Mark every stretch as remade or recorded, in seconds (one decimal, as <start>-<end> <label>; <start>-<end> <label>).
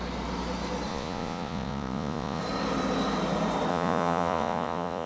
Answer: 0.0-0.9 recorded; 0.9-2.4 remade; 2.4-3.7 recorded; 3.7-5.1 remade